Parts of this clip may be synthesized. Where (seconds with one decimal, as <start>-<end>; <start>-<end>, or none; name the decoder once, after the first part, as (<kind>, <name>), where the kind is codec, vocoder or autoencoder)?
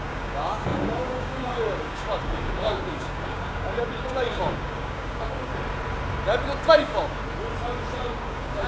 0.0-5.5 (codec, DAC); 6.7-7.2; 8.0-8.7